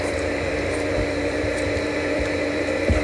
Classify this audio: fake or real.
fake